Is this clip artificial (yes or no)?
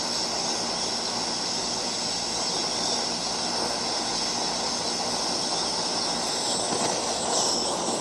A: no